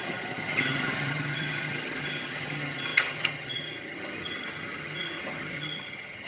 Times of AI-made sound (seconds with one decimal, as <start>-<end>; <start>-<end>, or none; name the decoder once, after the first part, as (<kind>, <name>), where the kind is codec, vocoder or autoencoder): 0.0-6.3 (vocoder, HiFi-GAN)